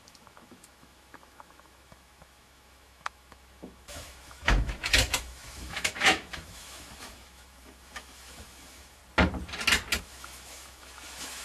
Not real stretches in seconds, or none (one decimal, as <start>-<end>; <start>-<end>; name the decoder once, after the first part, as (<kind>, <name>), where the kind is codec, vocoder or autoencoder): 0.0-9.0 (autoencoder, DAC-VAE); 10.0-11.4

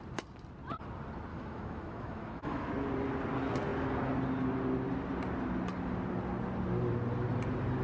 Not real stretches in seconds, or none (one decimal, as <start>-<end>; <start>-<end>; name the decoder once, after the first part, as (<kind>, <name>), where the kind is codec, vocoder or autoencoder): 1.3-2.7 (autoencoder, DAC-VAE)

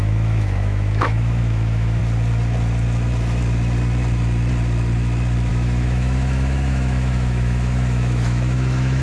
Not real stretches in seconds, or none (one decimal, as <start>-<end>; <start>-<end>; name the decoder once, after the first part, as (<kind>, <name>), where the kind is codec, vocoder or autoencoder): 0.0-2.0 (autoencoder, DAC-VAE); 5.5-9.0